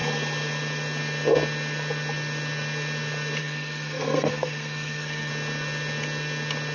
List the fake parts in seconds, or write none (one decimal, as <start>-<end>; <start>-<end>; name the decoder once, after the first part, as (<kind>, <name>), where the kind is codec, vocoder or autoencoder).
3.4-5.3 (codec, SNAC)